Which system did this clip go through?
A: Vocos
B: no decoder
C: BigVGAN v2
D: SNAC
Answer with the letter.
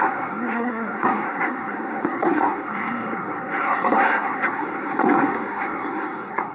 D